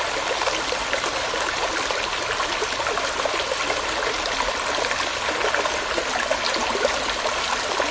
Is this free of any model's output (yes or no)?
yes